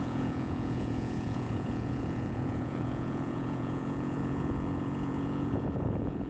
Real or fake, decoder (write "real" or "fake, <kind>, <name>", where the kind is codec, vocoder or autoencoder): fake, vocoder, Vocos